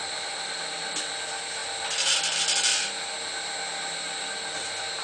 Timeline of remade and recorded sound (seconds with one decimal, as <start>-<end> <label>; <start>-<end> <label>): 0.0-5.0 recorded

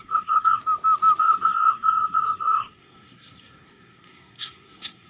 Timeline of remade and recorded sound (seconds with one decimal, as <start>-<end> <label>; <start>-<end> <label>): 0.0-0.6 remade; 0.6-1.2 recorded; 1.2-5.1 remade

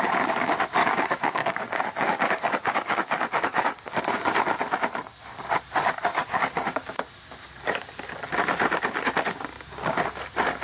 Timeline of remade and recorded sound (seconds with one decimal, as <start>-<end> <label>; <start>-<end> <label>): 0.0-0.8 recorded; 0.8-4.0 remade; 4.0-6.1 recorded; 6.1-7.0 remade; 7.0-10.6 recorded

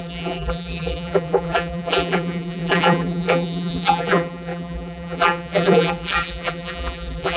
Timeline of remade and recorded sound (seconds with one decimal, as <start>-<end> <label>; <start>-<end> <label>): 0.0-7.4 remade

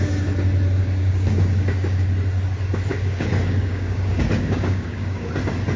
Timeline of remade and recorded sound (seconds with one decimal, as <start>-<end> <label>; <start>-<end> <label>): 0.0-0.8 recorded; 0.8-2.0 remade; 2.0-2.9 recorded; 2.9-5.3 remade; 5.3-5.8 recorded